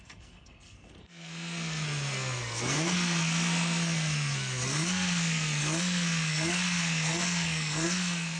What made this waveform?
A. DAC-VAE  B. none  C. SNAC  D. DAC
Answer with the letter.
C